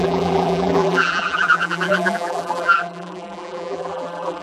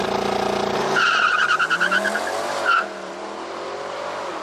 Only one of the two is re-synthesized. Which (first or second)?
first